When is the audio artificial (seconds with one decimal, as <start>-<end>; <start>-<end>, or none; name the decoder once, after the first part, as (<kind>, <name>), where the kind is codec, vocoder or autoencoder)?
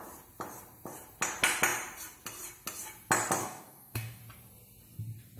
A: 3.4-4.2 (codec, DAC)